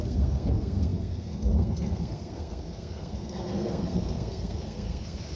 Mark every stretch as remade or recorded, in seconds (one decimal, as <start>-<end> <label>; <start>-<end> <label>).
0.0-5.4 remade